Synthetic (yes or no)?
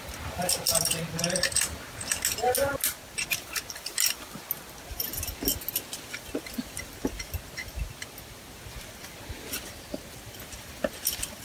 no